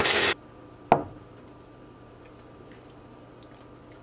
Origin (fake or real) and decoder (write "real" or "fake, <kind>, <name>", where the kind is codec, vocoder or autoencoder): real